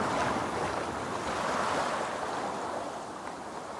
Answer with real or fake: real